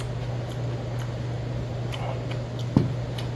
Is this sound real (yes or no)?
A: yes